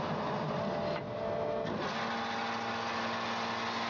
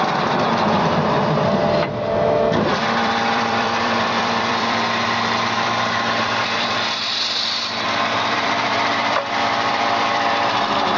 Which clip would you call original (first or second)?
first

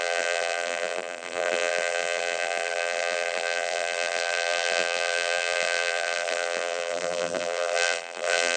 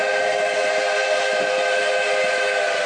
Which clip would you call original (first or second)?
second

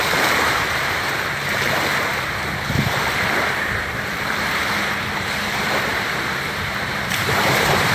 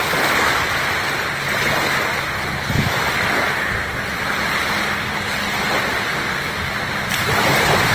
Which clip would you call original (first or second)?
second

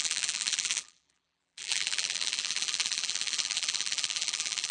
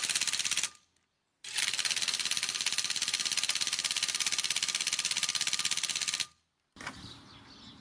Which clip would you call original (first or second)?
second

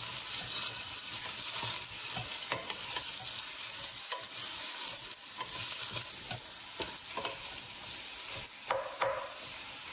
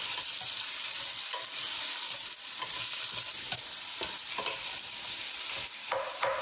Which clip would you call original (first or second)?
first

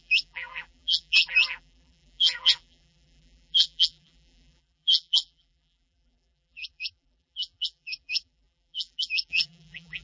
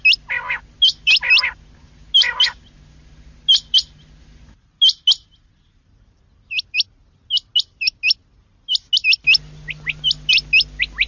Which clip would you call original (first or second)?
second